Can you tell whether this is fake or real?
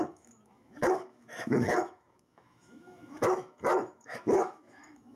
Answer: fake